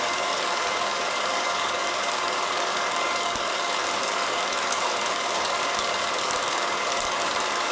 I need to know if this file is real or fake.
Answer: fake